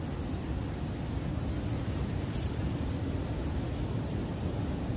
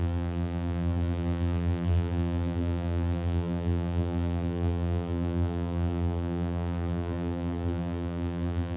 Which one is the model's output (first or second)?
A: second